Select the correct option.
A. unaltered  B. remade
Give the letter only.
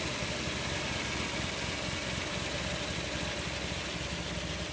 A